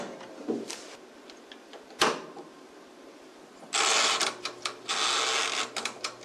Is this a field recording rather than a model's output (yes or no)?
yes